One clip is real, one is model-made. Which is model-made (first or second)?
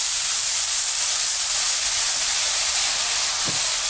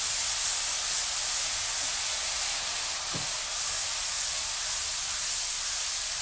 first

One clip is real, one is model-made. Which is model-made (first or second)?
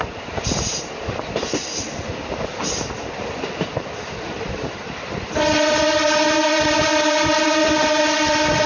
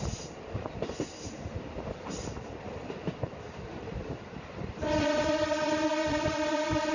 second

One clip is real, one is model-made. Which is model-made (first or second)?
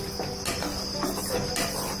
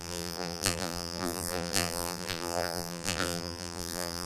second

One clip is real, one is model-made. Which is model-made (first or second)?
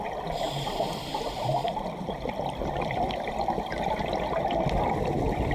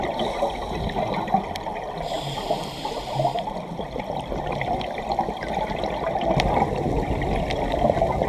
first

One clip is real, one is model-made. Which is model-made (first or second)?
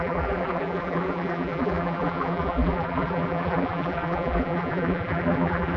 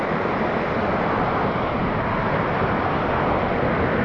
first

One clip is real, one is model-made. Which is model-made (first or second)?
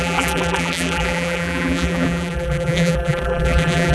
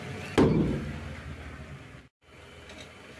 first